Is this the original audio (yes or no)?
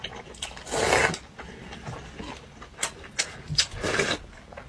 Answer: yes